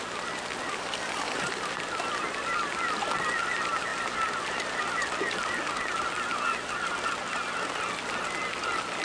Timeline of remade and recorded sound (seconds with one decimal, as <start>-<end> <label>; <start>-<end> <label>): 0.0-9.0 recorded